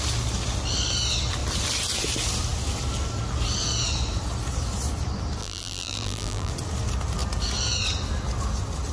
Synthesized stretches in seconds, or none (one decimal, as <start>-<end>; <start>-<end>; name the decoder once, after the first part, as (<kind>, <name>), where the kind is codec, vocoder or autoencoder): 5.4-6.5 (vocoder, BigVGAN v2)